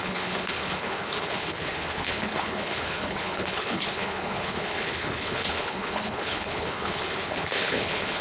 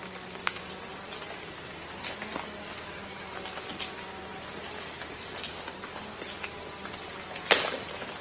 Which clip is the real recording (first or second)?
second